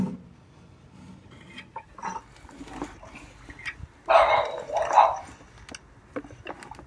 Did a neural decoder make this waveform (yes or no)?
no